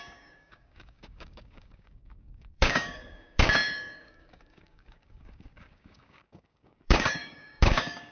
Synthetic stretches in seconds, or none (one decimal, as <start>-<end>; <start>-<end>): 0.0-8.1